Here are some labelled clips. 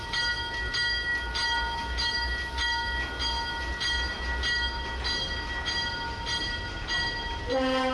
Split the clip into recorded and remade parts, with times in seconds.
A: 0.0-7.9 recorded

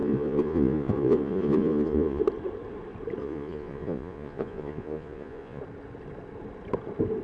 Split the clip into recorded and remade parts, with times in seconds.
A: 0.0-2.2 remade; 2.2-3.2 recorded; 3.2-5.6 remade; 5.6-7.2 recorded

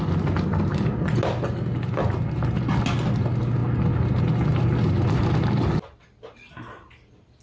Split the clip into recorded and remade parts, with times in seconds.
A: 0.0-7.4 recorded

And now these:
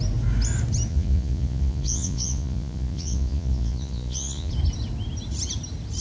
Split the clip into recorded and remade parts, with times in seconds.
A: 0.0-0.9 recorded; 0.9-4.5 remade; 4.5-6.0 recorded

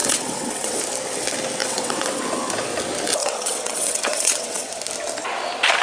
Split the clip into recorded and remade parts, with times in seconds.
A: 0.0-0.8 remade; 0.8-1.6 recorded; 1.6-2.2 remade; 2.2-3.2 recorded; 3.2-4.8 remade; 4.8-5.8 recorded

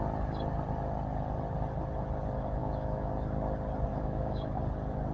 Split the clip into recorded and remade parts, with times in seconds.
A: 0.0-2.6 recorded; 2.6-3.1 remade; 3.1-3.9 recorded; 3.9-4.6 remade; 4.6-5.1 recorded

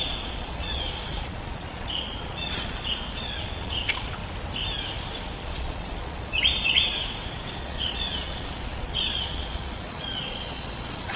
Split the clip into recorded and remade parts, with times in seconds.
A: 0.0-4.2 remade; 4.2-5.4 recorded; 5.4-6.9 remade; 6.9-7.6 recorded; 7.6-11.2 remade